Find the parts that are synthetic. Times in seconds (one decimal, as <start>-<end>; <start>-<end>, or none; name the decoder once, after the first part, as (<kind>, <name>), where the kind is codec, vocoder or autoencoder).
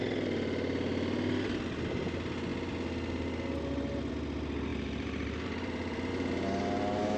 4.7-6.1 (vocoder, BigVGAN v2)